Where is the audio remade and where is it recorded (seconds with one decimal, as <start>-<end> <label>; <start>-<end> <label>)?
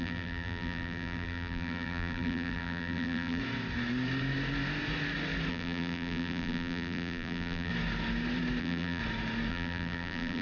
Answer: 0.0-3.4 remade; 3.4-5.5 recorded; 5.5-7.7 remade; 7.7-8.6 recorded; 8.6-9.0 remade; 9.0-9.5 recorded; 9.5-10.4 remade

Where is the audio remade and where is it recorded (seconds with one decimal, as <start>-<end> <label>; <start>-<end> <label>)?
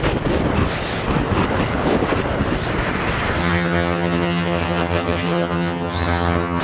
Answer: 0.0-3.4 recorded; 3.4-6.6 remade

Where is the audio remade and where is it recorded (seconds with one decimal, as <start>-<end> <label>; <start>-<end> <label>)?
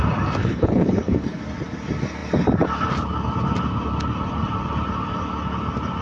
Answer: 0.0-0.4 recorded; 0.4-1.4 remade; 1.4-6.0 recorded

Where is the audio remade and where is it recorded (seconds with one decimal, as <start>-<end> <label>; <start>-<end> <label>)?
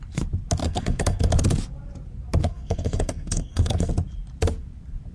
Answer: 0.0-0.6 recorded; 0.6-1.3 remade; 1.3-2.4 recorded; 2.4-3.9 remade; 3.9-5.1 recorded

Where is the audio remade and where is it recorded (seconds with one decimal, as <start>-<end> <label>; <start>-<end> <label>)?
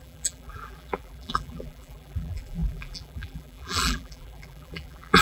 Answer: 0.0-5.2 remade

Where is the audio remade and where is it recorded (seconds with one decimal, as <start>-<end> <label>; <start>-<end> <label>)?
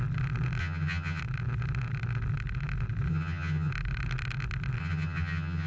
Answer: 0.0-0.6 recorded; 0.6-1.2 remade; 1.2-3.1 recorded; 3.1-3.7 remade; 3.7-4.8 recorded; 4.8-5.7 remade